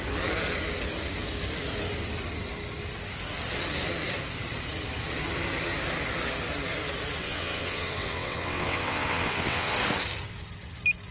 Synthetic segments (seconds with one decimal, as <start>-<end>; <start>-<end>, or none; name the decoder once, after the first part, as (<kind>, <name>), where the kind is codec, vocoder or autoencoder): 7.2-9.7 (vocoder, WaveNeXt)